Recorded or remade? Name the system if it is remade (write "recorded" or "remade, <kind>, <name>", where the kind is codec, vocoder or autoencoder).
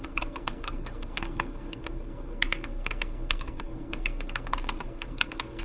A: remade, codec, SNAC